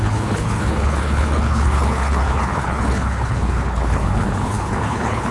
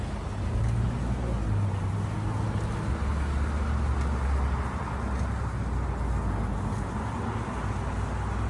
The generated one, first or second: first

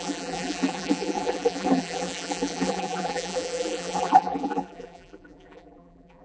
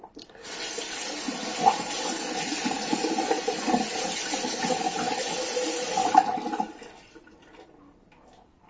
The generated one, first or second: first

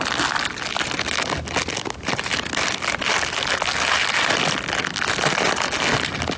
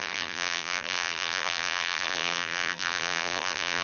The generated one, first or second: second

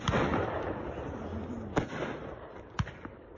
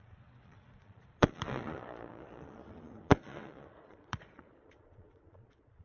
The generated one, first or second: second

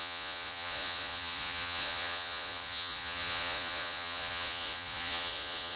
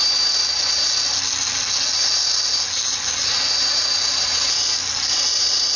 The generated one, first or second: first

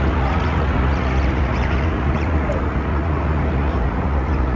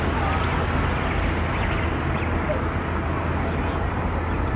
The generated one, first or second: first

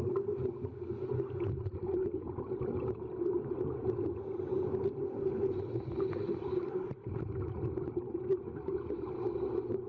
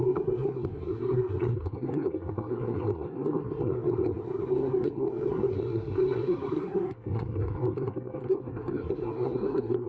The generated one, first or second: second